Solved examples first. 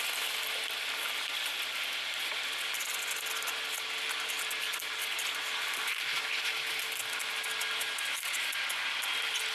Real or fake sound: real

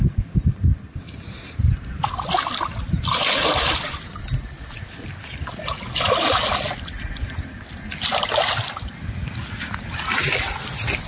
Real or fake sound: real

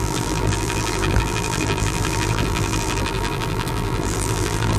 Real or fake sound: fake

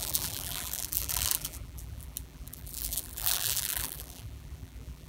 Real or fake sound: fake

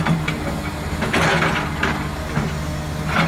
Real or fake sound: real